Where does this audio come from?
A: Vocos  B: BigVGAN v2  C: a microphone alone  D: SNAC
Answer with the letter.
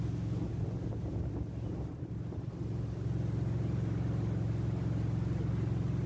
C